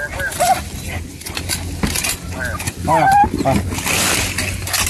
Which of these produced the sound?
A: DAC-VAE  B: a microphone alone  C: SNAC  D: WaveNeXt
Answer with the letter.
B